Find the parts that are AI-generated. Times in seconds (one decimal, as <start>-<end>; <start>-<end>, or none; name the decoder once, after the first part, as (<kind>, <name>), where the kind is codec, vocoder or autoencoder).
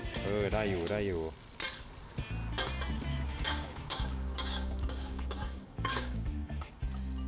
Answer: 3.1-6.8 (codec, DAC)